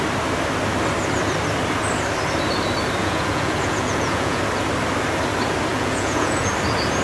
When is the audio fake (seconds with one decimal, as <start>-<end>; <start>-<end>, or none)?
3.0-4.4; 5.7-6.5